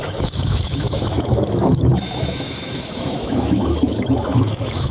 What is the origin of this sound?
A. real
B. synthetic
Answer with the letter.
B